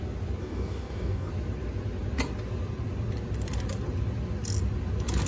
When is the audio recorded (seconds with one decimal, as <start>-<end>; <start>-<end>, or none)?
0.0-0.4; 1.3-5.3